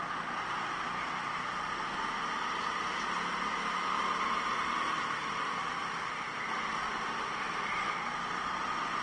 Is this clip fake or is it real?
real